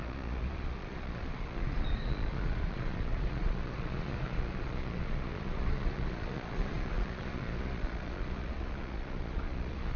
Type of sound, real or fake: fake